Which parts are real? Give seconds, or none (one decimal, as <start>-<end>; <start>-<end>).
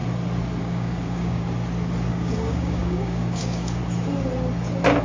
0.0-0.6; 1.4-2.1; 3.8-5.0